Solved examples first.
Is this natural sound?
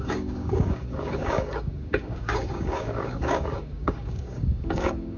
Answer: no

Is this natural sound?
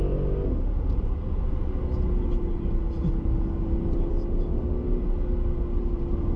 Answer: yes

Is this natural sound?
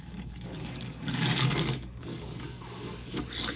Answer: no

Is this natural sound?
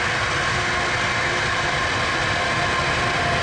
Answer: yes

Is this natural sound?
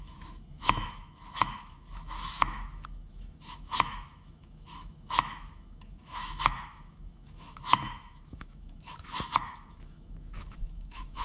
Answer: no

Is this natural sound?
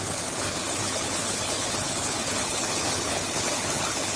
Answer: no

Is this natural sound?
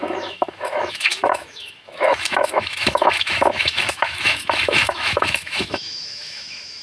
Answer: no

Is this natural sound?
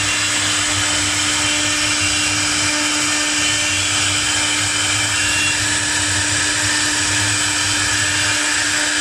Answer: yes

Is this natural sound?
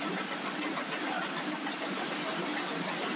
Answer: yes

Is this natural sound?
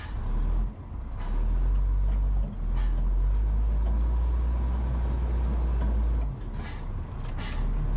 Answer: yes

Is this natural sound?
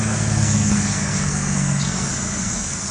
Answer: no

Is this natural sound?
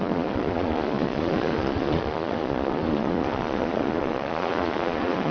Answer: no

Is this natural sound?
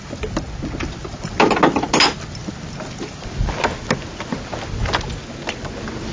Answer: yes